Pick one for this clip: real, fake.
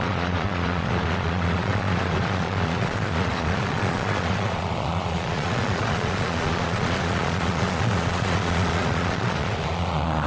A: fake